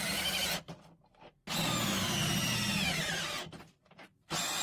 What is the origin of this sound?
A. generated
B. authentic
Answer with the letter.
B